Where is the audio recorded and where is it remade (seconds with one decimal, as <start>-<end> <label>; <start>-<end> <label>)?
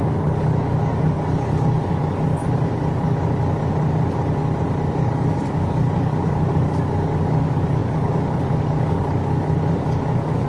0.0-2.4 remade; 2.4-4.9 recorded; 4.9-10.5 remade